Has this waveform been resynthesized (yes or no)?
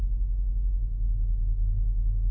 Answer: yes